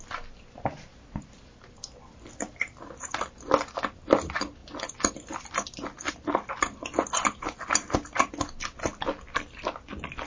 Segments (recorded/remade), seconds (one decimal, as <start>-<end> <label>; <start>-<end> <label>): 0.0-0.9 recorded; 0.9-3.3 remade; 3.3-10.3 recorded